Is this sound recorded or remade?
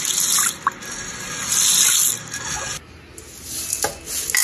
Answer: recorded